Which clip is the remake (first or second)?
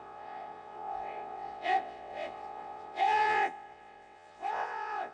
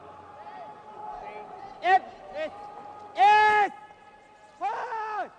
first